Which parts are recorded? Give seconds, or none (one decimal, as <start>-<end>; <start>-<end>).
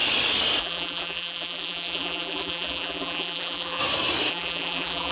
0.0-0.6; 3.8-4.3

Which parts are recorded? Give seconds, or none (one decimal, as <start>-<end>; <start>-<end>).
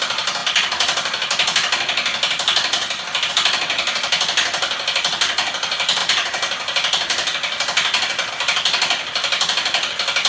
0.0-10.3